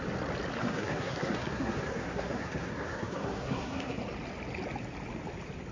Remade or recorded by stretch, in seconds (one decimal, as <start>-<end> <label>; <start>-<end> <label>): 0.0-0.6 recorded; 0.6-4.0 remade; 4.0-5.7 recorded

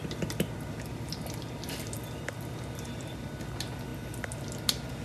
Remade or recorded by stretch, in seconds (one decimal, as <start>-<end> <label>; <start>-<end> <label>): 0.0-5.0 recorded

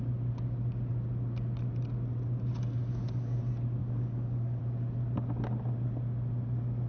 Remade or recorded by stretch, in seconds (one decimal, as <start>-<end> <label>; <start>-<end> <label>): 0.0-2.9 recorded; 2.9-3.4 remade; 3.4-3.8 recorded; 3.8-4.6 remade; 4.6-6.9 recorded

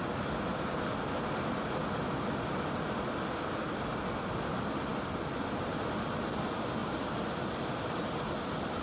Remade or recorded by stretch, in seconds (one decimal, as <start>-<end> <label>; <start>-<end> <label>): 0.0-8.8 recorded

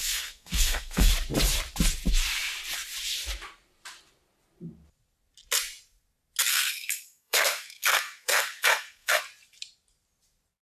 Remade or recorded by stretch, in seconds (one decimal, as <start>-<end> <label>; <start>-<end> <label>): 0.0-1.1 remade; 1.1-6.5 recorded; 6.5-9.2 remade; 9.2-10.6 recorded

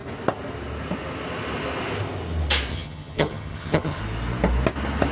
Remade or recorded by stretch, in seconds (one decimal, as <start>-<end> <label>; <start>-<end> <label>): 0.0-2.7 recorded; 2.7-4.0 remade; 4.0-5.1 recorded

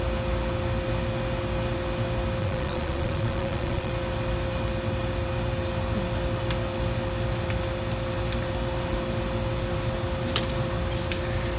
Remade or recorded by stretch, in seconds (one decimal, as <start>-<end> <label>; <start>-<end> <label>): 0.0-2.4 recorded; 2.4-3.9 remade; 3.9-11.6 recorded